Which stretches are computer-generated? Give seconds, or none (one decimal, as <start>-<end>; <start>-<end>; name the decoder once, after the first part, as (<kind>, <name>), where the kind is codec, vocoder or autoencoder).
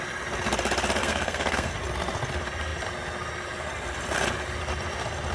1.0-1.7 (codec, SNAC)